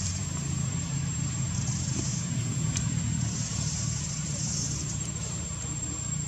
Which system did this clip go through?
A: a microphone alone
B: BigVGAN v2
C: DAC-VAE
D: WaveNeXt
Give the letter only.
B